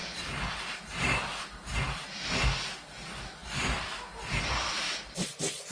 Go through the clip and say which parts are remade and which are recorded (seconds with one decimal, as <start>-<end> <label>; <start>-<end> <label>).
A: 0.0-5.7 recorded